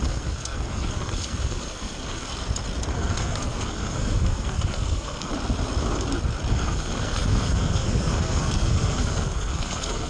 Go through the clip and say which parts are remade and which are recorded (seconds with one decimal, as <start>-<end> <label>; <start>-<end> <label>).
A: 0.0-2.3 remade; 2.3-2.9 recorded; 2.9-5.3 remade; 5.3-6.5 recorded; 6.5-10.1 remade